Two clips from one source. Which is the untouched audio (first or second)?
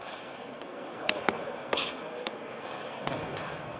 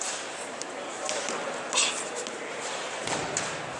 second